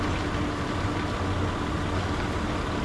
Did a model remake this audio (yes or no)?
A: no